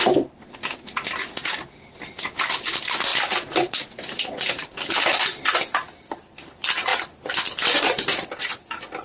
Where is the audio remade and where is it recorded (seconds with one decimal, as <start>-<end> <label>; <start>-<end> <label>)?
0.0-9.0 remade